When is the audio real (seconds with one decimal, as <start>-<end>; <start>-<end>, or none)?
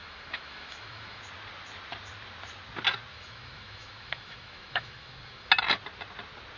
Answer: 1.2-3.1; 5.5-6.6